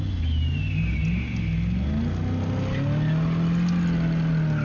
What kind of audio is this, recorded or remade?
recorded